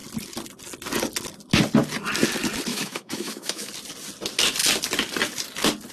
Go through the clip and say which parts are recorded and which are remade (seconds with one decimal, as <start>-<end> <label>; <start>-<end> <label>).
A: 0.0-2.7 recorded; 2.7-3.7 remade; 3.7-5.9 recorded